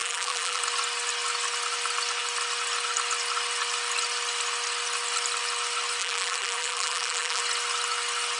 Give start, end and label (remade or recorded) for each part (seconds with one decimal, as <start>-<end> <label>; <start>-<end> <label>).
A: 0.0-0.6 remade; 0.6-6.0 recorded; 6.0-7.4 remade; 7.4-8.4 recorded